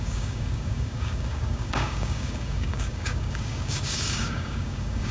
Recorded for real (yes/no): no